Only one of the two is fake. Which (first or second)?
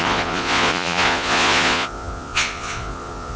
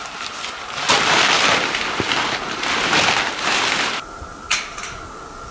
first